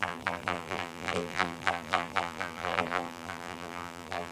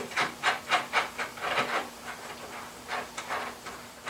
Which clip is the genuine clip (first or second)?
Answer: second